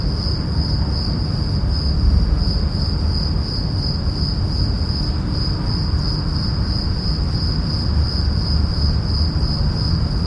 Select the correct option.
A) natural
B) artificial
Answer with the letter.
A